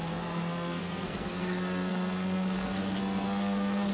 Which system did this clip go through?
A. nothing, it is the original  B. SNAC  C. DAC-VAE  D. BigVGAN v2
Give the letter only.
B